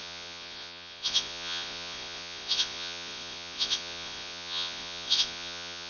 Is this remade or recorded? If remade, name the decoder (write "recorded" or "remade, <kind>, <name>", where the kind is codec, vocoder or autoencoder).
remade, vocoder, Vocos